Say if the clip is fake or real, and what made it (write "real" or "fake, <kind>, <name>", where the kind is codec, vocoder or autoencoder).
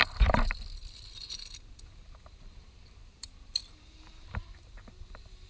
fake, vocoder, BigVGAN v2